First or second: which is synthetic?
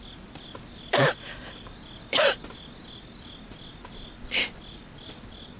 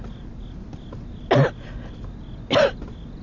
first